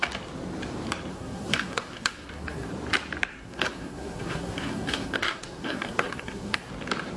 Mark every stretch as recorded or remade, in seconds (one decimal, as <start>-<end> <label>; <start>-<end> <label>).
0.0-1.1 recorded; 1.1-2.7 remade; 2.7-3.3 recorded; 3.3-6.7 remade; 6.7-7.2 recorded